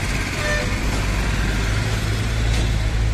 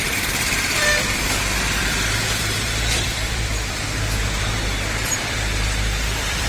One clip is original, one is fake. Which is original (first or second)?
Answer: first